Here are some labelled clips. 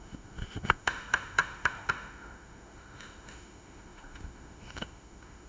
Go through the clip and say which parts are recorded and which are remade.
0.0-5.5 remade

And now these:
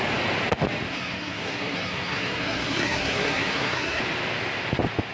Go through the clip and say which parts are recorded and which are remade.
0.0-0.9 recorded; 0.9-4.0 remade; 4.0-5.1 recorded

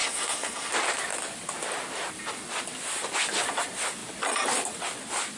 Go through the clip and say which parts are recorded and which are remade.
0.0-0.7 remade; 0.7-5.4 recorded